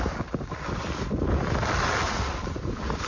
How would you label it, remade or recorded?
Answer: recorded